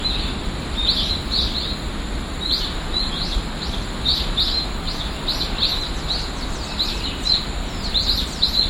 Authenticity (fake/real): real